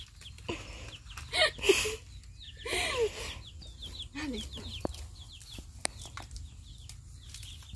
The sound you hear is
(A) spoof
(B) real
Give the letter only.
B